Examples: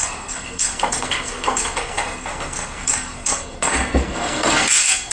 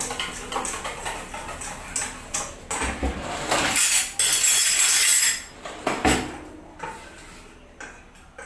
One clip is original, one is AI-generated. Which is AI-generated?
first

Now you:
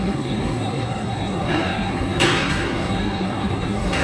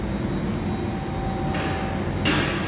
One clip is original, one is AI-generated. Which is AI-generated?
first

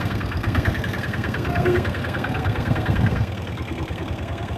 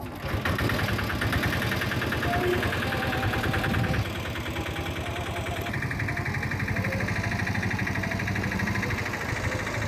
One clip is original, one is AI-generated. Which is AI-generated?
first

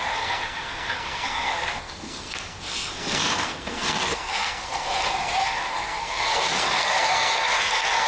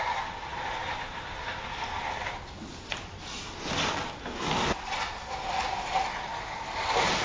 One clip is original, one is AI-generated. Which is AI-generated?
first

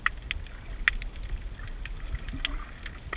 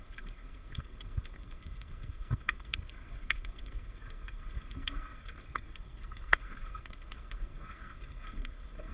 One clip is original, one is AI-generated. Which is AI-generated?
second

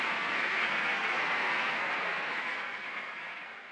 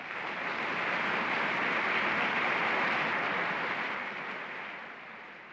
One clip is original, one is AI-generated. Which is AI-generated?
first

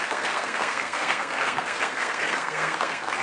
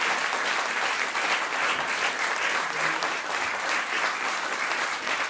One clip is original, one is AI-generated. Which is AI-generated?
first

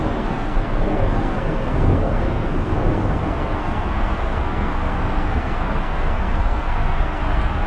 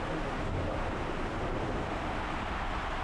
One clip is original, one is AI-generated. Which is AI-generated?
first